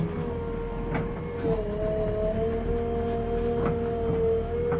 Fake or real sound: real